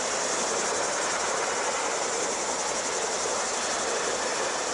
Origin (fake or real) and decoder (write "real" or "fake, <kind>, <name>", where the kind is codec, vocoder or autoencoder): real